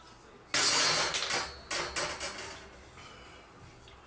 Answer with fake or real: real